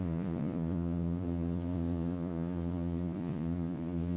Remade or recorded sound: remade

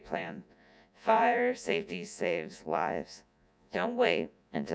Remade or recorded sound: remade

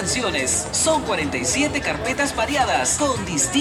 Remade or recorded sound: recorded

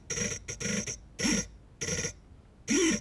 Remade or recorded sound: recorded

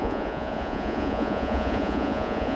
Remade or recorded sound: remade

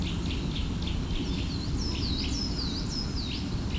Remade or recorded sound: recorded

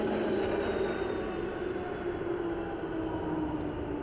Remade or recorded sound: recorded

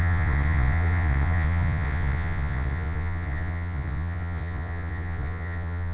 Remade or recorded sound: remade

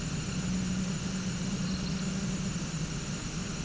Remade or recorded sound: recorded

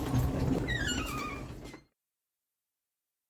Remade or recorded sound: recorded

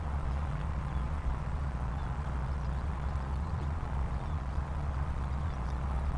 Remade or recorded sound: remade